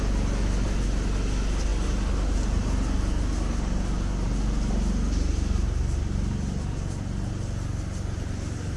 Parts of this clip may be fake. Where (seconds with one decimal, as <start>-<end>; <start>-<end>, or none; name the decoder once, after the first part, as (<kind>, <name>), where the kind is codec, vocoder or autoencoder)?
none